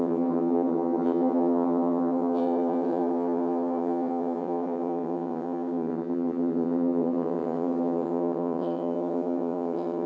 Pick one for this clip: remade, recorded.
remade